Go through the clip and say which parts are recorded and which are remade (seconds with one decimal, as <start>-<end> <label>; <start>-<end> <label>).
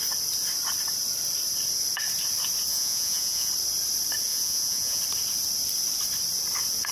0.0-2.7 recorded; 2.7-3.5 remade; 3.5-4.3 recorded; 4.3-5.0 remade; 5.0-6.9 recorded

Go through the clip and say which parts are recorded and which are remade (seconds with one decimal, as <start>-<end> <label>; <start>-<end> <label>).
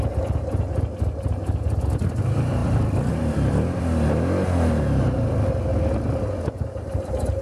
0.0-2.6 recorded; 2.6-3.1 remade; 3.1-7.4 recorded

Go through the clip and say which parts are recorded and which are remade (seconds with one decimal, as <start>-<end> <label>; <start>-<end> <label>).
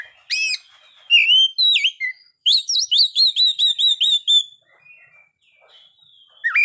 0.0-2.4 recorded; 2.4-3.3 remade; 3.3-6.6 recorded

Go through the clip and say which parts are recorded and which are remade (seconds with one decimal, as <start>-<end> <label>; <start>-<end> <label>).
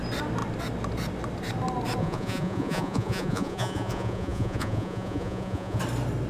0.0-2.0 recorded; 2.0-5.8 remade; 5.8-6.3 recorded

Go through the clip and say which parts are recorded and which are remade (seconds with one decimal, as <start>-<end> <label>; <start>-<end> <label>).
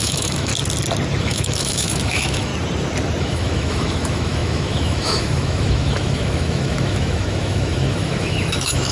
0.0-0.5 remade; 0.5-1.2 recorded; 1.2-2.5 remade; 2.5-3.2 recorded; 3.2-8.9 remade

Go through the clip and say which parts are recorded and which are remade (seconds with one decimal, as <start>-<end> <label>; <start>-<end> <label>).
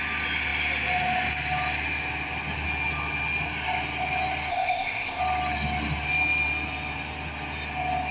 0.0-4.5 recorded; 4.5-5.2 remade; 5.2-8.1 recorded